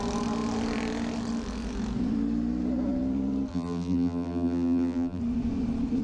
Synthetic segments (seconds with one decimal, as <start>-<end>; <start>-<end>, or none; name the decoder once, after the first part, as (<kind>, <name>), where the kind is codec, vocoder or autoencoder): 3.5-5.2 (vocoder, BigVGAN v2)